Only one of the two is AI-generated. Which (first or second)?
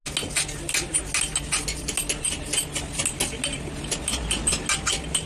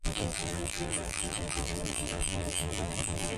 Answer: second